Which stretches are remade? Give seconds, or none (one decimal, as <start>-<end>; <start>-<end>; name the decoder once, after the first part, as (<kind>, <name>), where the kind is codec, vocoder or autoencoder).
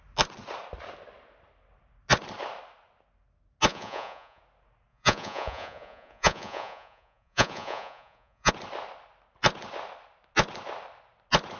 3.7-4.4 (vocoder, Vocos); 4.9-8.5